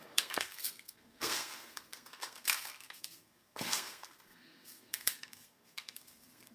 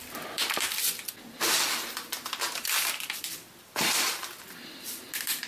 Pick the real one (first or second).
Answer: second